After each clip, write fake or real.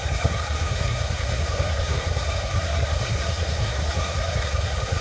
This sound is fake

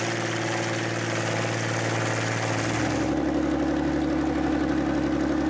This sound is real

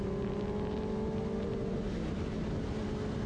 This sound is real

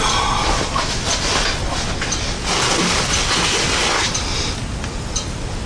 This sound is real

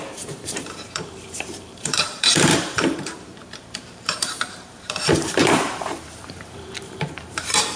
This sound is fake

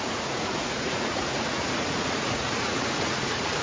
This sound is fake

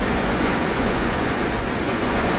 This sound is fake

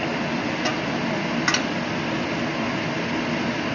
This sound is real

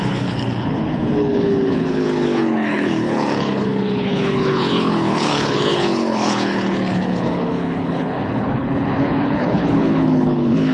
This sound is fake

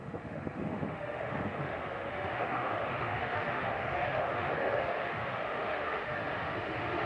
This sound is fake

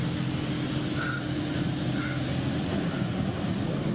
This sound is real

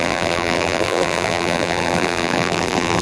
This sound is fake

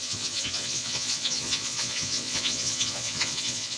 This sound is fake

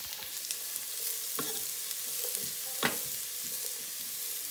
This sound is real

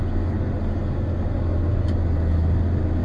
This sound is real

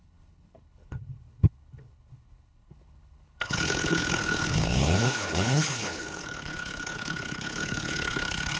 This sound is fake